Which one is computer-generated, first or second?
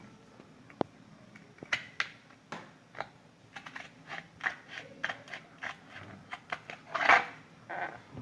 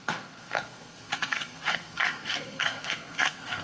second